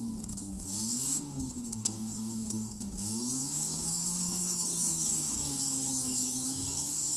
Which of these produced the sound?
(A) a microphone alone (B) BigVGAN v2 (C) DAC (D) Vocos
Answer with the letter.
C